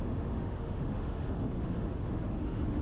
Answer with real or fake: fake